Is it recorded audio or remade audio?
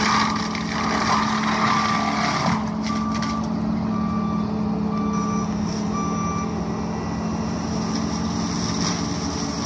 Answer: recorded